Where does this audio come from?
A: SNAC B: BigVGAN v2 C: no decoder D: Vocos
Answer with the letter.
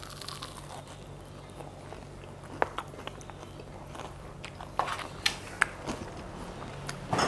C